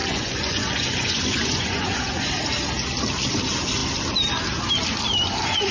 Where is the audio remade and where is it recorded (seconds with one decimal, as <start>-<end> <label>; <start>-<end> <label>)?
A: 0.0-2.3 remade; 2.3-5.7 recorded